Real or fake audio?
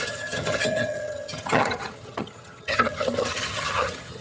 fake